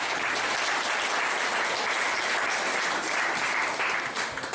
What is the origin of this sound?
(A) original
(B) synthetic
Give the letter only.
A